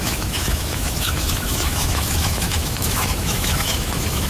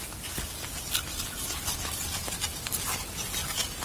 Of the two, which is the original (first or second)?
second